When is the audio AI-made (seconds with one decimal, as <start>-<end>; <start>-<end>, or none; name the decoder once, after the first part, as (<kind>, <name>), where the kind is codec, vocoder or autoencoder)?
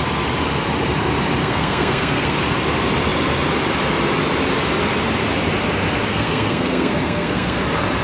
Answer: 1.4-2.4 (codec, SNAC); 6.1-7.6